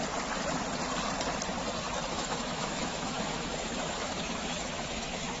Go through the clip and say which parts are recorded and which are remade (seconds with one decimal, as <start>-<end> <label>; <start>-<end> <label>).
0.0-2.1 recorded; 2.1-5.4 remade